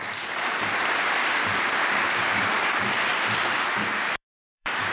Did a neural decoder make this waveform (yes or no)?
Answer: yes